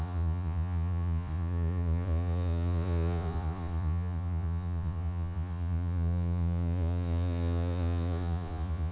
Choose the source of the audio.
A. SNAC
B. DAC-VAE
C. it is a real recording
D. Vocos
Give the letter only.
D